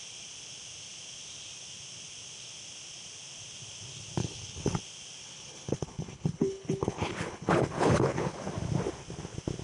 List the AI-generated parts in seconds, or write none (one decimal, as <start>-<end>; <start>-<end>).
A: 4.2-4.8; 5.2-8.5